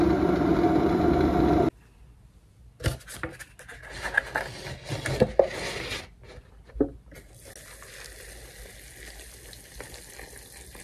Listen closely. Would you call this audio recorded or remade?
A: recorded